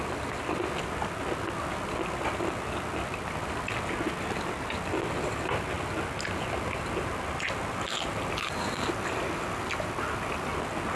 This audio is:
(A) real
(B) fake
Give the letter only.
A